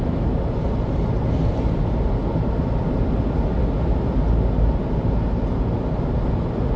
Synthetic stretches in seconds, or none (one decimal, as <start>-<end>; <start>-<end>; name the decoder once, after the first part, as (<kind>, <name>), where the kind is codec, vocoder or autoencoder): none